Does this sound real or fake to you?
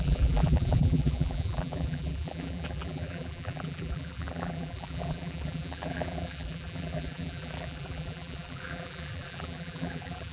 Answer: fake